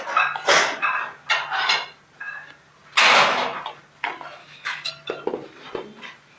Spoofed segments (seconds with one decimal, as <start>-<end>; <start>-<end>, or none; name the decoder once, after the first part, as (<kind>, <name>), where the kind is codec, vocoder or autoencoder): 4.4-4.9 (codec, DAC)